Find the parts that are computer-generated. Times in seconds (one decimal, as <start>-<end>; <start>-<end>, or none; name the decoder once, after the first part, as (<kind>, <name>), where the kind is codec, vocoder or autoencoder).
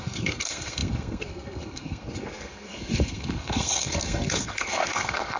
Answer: 0.0-5.4 (codec, SNAC)